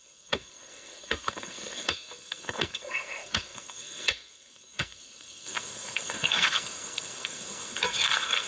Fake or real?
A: fake